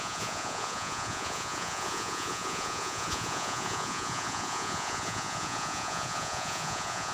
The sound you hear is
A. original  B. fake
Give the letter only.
B